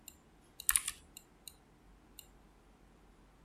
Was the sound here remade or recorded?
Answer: recorded